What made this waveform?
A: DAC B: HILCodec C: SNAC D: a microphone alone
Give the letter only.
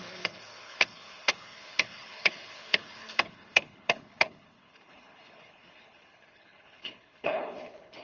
B